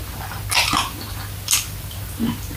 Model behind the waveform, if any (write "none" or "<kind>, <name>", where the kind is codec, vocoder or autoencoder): none